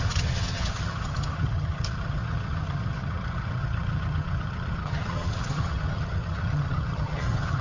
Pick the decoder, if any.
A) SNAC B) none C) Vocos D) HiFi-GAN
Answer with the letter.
D